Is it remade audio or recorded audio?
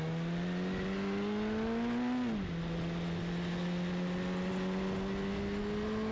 recorded